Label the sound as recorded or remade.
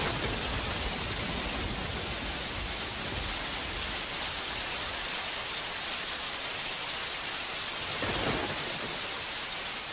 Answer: recorded